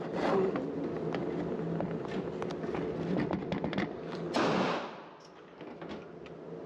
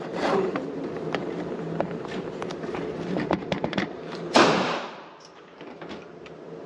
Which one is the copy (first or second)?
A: second